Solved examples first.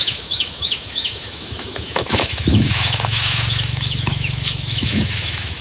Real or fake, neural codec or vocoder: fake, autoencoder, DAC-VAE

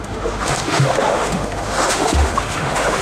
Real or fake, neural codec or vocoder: fake, autoencoder, DAC-VAE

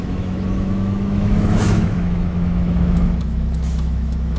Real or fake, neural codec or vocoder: fake, autoencoder, DAC-VAE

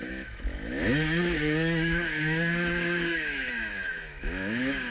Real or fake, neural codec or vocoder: fake, autoencoder, DAC-VAE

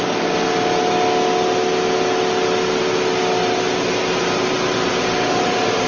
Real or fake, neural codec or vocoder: real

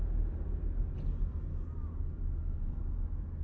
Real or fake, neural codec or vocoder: real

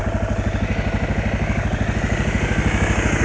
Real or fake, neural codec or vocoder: real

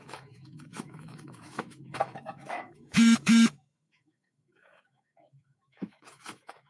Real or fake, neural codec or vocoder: fake, autoencoder, DAC-VAE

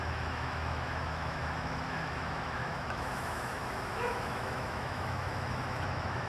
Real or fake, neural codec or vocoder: fake, autoencoder, DAC-VAE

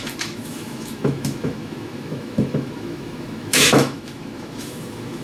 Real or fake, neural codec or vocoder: fake, autoencoder, DAC-VAE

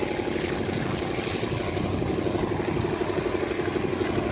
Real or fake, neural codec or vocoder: real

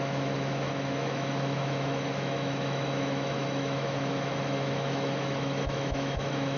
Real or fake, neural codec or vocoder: fake, autoencoder, DAC-VAE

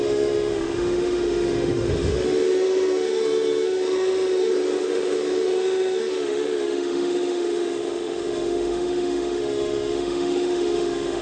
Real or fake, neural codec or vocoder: fake, autoencoder, DAC-VAE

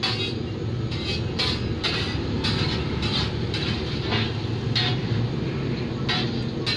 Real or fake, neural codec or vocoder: real